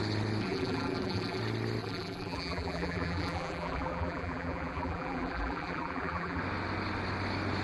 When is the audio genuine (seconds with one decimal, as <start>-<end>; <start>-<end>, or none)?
0.0-0.4; 1.4-1.8; 6.4-7.6